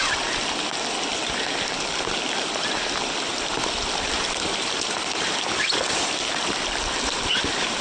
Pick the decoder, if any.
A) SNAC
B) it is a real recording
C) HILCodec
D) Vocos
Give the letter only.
B